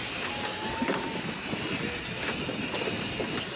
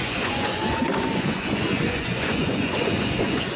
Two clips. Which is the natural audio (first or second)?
first